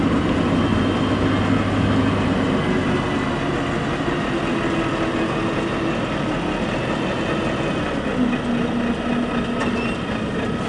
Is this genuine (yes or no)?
yes